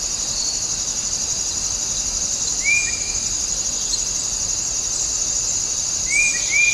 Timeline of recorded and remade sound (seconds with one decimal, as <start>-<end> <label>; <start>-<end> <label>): 0.0-6.7 recorded